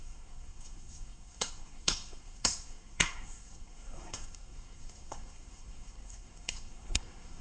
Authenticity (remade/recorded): remade